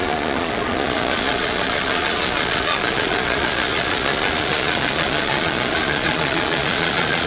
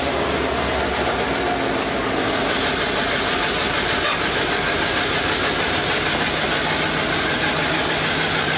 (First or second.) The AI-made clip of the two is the first